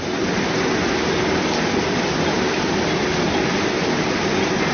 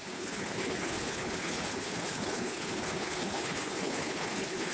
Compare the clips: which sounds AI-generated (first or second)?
second